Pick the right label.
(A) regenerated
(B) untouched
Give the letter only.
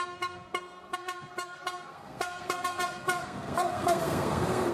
A